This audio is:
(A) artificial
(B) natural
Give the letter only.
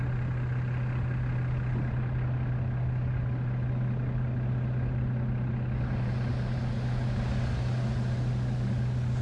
B